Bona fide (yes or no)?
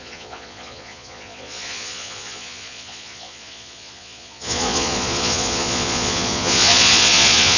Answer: no